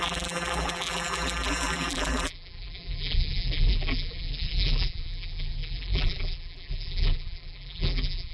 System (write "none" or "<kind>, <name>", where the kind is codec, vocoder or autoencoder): vocoder, BigVGAN v2